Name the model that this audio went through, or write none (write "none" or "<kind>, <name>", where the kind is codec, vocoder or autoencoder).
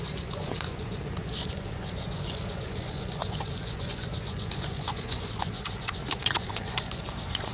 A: vocoder, Vocos